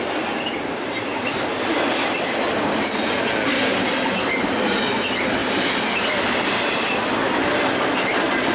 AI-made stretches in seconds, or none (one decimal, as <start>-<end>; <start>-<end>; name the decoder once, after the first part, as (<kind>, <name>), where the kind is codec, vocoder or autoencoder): none